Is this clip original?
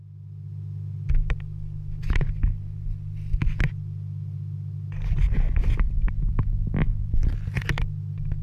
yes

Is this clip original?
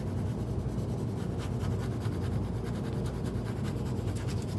yes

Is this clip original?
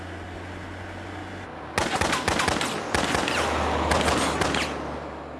yes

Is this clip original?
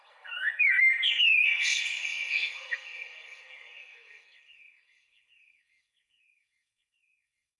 no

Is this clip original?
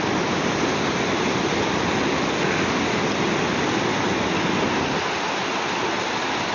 yes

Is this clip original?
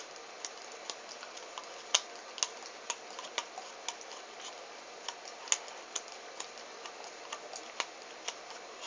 yes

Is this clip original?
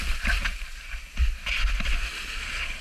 yes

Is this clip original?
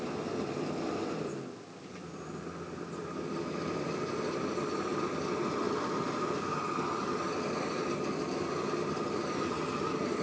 yes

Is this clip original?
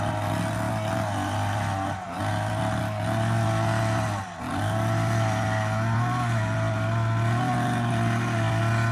yes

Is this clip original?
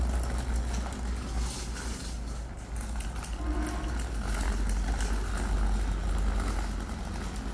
yes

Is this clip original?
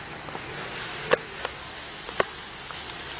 yes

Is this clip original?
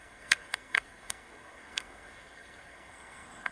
no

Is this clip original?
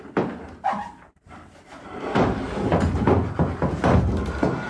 yes